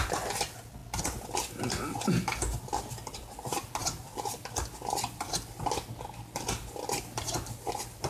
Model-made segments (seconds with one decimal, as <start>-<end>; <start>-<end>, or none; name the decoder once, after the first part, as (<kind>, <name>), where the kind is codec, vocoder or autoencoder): none